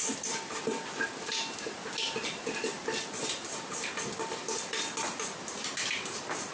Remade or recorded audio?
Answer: recorded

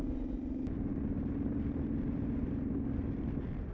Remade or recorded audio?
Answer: recorded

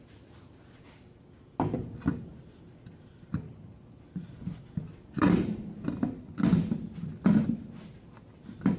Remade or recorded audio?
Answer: recorded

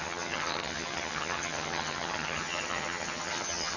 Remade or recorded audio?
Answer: remade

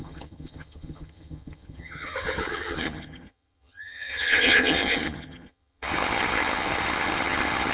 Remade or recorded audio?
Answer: remade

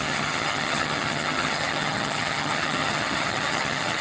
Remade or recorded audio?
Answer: remade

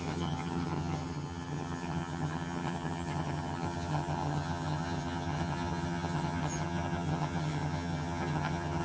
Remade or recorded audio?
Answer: remade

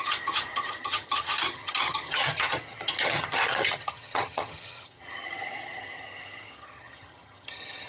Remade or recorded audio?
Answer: remade